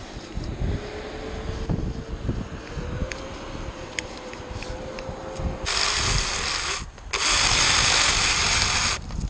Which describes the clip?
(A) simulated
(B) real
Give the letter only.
B